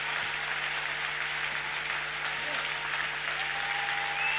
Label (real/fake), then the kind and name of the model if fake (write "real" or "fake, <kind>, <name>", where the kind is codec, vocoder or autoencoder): real